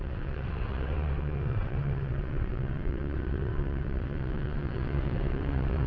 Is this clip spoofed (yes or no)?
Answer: yes